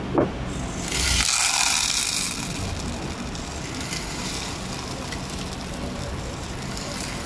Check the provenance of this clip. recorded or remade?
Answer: recorded